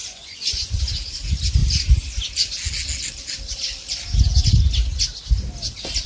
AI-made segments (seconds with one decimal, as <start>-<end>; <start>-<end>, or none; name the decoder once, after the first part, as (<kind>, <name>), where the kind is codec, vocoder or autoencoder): 0.0-0.8 (vocoder, Vocos)